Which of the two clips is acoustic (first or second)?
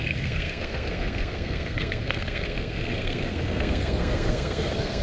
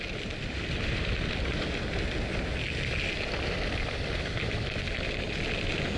second